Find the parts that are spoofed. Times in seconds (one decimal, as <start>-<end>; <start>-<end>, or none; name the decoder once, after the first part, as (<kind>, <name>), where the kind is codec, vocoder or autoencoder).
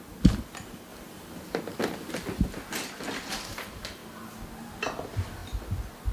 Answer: none